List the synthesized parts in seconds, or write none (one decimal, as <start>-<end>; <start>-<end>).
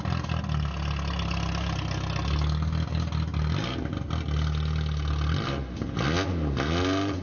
none